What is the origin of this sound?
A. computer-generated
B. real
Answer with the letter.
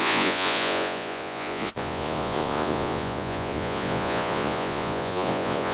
A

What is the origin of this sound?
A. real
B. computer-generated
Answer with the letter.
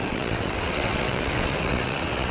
B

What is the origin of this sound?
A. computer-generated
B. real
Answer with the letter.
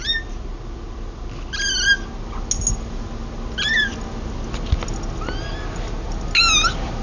B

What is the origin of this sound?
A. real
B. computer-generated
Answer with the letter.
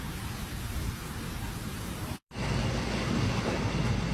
A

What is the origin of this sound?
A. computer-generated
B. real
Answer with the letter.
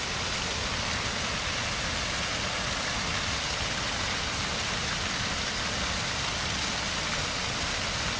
B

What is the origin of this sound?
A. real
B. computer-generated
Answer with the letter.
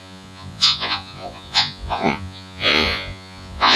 B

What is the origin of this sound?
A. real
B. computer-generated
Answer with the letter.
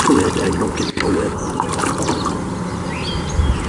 A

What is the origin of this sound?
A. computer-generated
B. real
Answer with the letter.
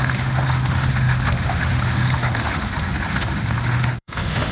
A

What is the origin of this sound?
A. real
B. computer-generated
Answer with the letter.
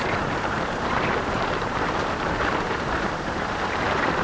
B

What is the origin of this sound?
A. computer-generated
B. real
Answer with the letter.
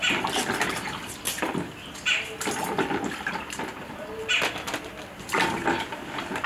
B